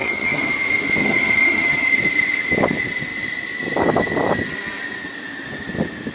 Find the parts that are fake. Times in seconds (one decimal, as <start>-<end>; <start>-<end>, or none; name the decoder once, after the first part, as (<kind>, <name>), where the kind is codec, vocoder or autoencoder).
0.0-0.5 (vocoder, HiFi-GAN); 1.0-1.9

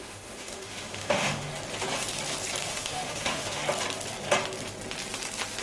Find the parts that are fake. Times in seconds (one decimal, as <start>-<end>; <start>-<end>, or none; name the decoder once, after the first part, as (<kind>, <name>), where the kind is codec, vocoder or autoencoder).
0.0-1.5 (autoencoder, DAC-VAE); 2.7-3.6

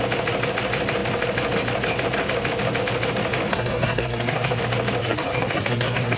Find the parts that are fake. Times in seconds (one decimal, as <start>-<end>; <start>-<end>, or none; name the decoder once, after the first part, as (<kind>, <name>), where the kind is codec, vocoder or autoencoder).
3.5-4.6 (codec, SNAC); 5.0-6.2

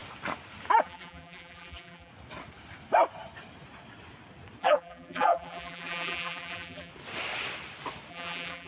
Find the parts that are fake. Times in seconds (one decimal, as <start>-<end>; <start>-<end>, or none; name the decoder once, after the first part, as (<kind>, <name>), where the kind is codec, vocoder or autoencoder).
0.8-2.1 (vocoder, BigVGAN v2); 4.6-6.9; 8.1-8.7

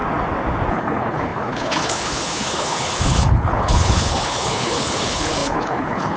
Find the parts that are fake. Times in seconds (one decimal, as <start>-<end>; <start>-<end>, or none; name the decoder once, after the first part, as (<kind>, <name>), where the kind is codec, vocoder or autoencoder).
0.7-6.2 (codec, HILCodec)

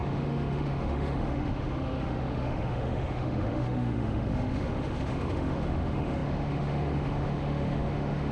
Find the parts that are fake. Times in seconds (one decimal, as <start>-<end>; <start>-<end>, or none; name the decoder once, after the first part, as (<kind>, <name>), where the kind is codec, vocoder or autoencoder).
0.0-8.3 (autoencoder, DAC-VAE)

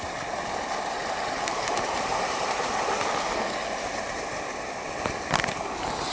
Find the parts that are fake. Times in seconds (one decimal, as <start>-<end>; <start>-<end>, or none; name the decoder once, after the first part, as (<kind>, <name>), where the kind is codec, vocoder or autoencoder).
1.0-2.7 (vocoder, BigVGAN v2); 3.6-4.3